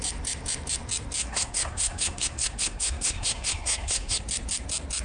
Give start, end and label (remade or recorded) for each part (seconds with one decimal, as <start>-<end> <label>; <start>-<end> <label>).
0.0-1.2 recorded; 1.2-4.2 remade; 4.2-5.0 recorded